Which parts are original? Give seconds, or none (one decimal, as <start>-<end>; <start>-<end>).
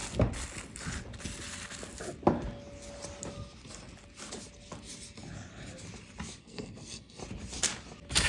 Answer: 0.0-6.4; 7.2-8.3